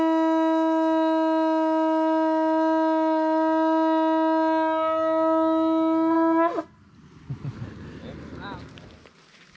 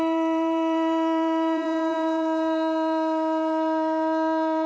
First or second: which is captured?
first